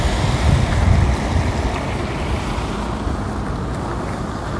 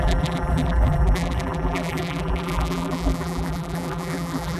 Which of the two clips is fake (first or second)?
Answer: second